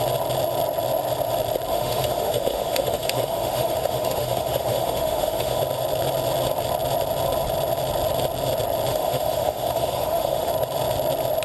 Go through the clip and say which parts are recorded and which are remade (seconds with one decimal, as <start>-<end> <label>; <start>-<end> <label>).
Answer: 0.0-1.7 recorded; 1.7-5.6 remade; 5.6-8.9 recorded; 8.9-10.5 remade; 10.5-11.4 recorded